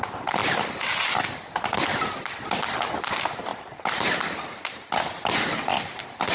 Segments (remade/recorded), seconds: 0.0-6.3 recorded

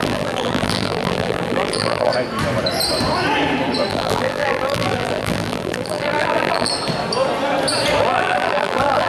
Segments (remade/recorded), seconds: 0.0-2.1 remade; 2.1-3.9 recorded; 3.9-6.7 remade; 6.7-8.0 recorded; 8.0-9.1 remade